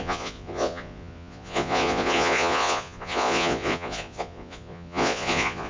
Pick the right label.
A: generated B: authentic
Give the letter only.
A